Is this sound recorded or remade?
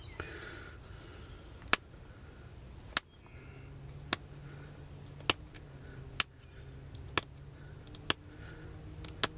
recorded